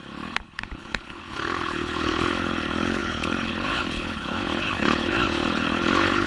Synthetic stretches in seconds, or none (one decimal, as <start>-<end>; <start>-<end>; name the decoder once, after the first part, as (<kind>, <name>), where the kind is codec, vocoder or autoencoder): 0.0-6.3 (codec, HILCodec)